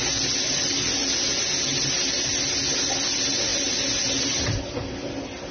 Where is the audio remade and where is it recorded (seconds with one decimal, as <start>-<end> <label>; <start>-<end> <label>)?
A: 0.0-5.5 recorded